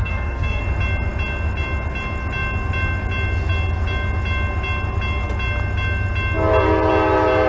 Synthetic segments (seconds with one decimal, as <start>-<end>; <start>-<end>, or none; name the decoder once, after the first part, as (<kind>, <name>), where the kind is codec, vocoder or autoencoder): 0.0-0.6 (codec, SNAC)